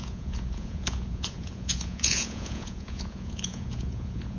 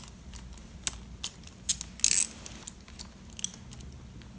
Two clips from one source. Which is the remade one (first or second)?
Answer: first